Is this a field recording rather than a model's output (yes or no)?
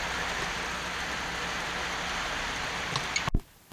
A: yes